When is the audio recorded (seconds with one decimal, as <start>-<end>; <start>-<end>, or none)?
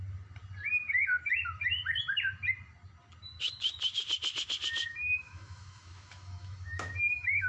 0.0-4.9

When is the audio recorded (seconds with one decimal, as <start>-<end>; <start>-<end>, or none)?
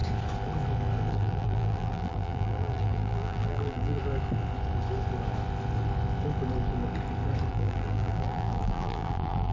0.0-1.1; 4.0-7.5